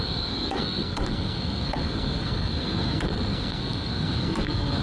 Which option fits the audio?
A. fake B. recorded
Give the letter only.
A